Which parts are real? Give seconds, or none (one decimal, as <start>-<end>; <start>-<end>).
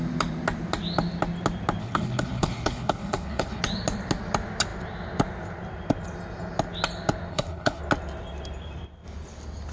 0.0-1.8; 3.6-7.3; 7.8-9.7